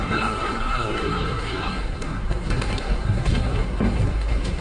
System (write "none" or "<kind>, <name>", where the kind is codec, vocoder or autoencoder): codec, SNAC